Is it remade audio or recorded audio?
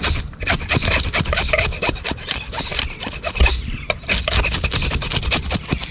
remade